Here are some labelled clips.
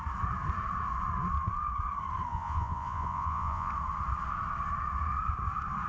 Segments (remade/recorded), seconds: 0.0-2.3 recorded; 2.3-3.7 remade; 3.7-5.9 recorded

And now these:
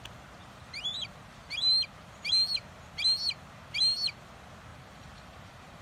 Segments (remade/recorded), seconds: 0.0-0.4 recorded; 0.4-1.9 remade; 1.9-4.7 recorded; 4.7-5.8 remade

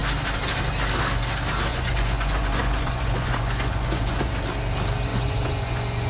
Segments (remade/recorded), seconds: 0.0-1.7 recorded; 1.7-4.3 remade; 4.3-5.1 recorded; 5.1-6.1 remade

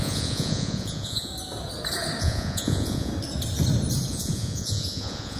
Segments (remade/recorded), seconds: 0.0-1.3 remade; 1.3-2.2 recorded; 2.2-3.1 remade; 3.1-4.1 recorded; 4.1-5.4 remade